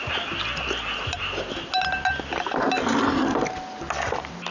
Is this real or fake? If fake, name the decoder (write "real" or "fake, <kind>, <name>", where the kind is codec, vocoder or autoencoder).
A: real